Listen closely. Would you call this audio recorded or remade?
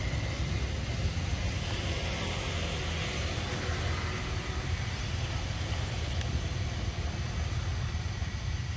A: recorded